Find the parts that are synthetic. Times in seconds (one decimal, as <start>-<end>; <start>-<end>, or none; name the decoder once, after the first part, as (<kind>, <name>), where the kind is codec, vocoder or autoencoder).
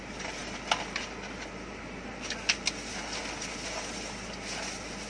none